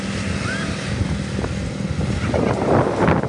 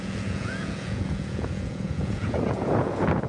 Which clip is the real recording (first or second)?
first